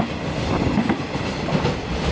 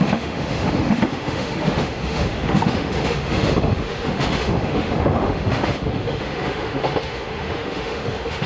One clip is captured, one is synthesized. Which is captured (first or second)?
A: first